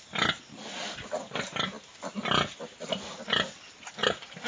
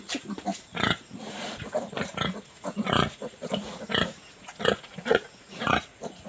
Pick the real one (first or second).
first